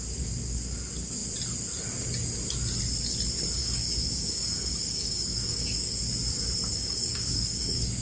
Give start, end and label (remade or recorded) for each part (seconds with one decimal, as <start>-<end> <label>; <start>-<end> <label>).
0.0-3.6 recorded; 3.6-6.0 remade; 6.0-6.7 recorded; 6.7-8.0 remade